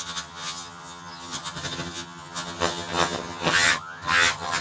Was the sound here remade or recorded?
remade